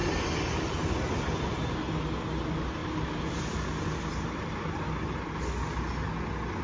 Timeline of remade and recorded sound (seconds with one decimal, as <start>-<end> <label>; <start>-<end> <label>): 0.0-6.6 recorded